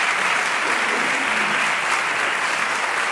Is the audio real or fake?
real